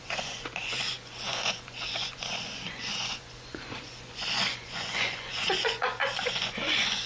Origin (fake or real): fake